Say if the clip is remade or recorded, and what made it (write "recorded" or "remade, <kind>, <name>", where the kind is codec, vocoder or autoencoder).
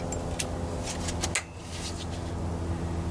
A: recorded